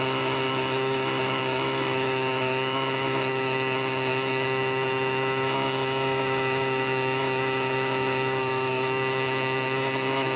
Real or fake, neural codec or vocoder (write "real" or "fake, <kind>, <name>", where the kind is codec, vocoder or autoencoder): fake, autoencoder, DAC-VAE